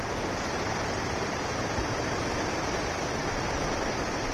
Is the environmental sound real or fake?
fake